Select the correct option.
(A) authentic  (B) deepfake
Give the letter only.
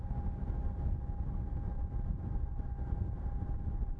A